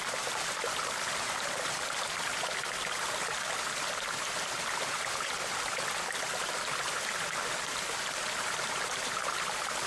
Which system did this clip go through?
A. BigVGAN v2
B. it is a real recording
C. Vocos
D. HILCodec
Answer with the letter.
B